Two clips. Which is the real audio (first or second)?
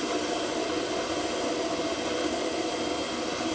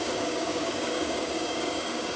first